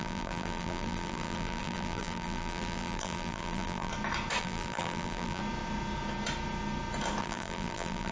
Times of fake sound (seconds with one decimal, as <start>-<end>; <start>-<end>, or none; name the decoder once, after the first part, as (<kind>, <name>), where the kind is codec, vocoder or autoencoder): 0.0-3.9 (vocoder, BigVGAN v2); 4.4-5.4; 7.2-8.1